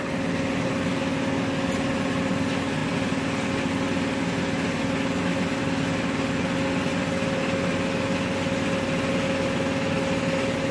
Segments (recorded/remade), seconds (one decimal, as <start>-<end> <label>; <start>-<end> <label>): 0.0-10.7 recorded